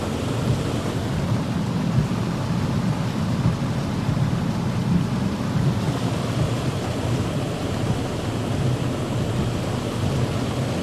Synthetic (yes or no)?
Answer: no